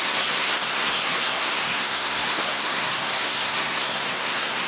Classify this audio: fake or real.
fake